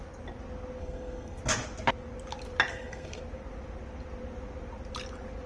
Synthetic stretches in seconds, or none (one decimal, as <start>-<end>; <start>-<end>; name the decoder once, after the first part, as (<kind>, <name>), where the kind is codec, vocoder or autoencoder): 0.8-1.4 (codec, SNAC); 2.7-3.2

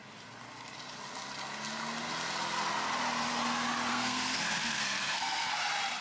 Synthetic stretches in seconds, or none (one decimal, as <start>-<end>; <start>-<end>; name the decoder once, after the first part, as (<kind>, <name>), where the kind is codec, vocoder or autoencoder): 3.9-5.5 (codec, SNAC)

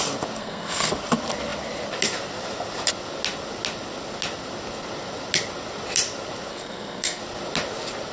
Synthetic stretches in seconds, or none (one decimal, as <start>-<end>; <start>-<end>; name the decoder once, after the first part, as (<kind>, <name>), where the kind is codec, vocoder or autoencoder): 0.4-0.9 (codec, SNAC); 6.5-7.2

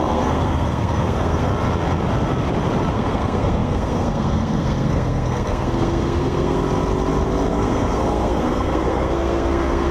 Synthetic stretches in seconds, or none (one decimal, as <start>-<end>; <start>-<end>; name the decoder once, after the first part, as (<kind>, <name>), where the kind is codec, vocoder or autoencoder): 0.0-1.5 (codec, SNAC); 2.9-6.7; 7.5-9.9